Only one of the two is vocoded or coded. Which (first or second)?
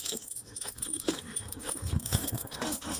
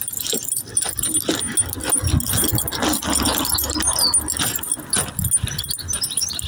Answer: first